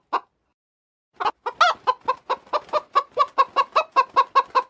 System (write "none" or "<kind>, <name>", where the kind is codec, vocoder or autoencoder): none